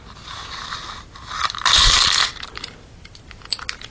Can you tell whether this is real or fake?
real